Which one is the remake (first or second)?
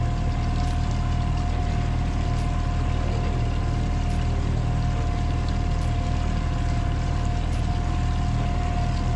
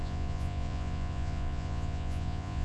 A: second